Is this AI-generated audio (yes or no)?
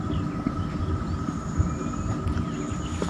no